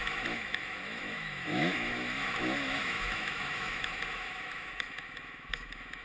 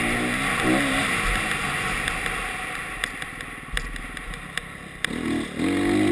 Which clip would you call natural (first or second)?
second